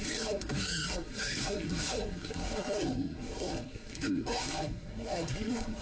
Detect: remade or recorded remade